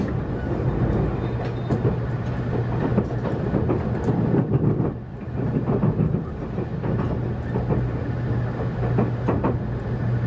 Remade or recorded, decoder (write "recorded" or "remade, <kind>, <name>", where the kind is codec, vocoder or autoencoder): recorded